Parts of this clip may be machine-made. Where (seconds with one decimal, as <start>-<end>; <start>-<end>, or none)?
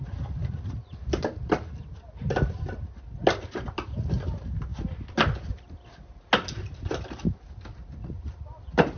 none